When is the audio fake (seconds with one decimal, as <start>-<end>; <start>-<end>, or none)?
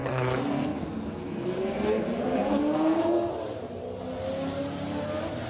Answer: 0.0-3.3